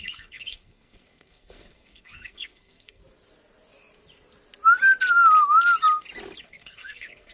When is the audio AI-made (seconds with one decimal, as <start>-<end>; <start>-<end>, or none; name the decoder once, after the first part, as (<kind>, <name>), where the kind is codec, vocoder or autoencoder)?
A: 0.0-3.0 (codec, SNAC); 6.4-7.3

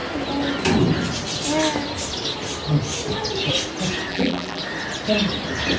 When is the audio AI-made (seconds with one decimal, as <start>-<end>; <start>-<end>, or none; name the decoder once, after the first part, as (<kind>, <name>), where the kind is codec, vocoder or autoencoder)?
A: 4.1-4.6 (vocoder, BigVGAN v2)

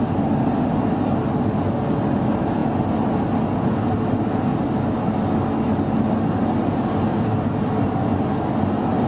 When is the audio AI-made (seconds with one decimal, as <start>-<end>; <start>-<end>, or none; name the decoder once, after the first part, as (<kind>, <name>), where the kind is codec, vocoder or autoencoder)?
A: none